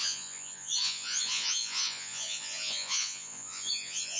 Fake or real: fake